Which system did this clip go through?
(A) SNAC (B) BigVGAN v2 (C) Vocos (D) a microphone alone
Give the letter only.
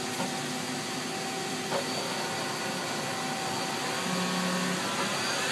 D